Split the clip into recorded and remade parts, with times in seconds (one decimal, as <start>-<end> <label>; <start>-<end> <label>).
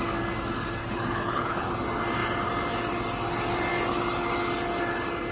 0.0-0.8 recorded; 0.8-1.7 remade; 1.7-5.3 recorded